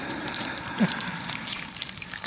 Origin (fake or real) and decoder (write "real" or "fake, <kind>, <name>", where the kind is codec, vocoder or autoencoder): fake, vocoder, BigVGAN v2